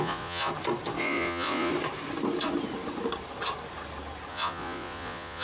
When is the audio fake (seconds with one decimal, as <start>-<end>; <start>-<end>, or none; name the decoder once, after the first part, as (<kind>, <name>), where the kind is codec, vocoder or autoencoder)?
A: 0.0-0.5 (vocoder, Vocos); 1.0-1.7; 4.3-5.4